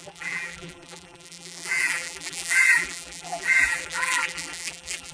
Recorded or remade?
remade